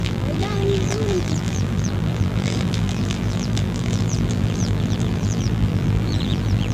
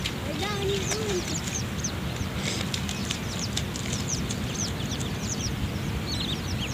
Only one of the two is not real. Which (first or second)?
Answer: first